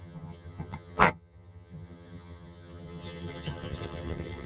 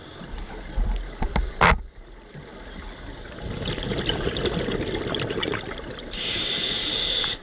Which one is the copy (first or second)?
first